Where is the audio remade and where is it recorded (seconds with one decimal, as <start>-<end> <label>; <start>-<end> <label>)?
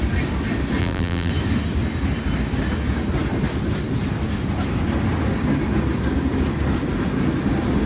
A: 0.0-0.8 recorded; 0.8-1.3 remade; 1.3-7.9 recorded